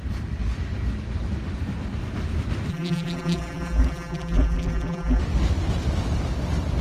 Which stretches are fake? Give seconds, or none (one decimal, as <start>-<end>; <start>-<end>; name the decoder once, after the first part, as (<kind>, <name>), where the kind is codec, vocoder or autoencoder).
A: 2.7-5.2 (vocoder, BigVGAN v2)